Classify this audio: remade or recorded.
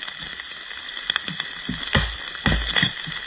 recorded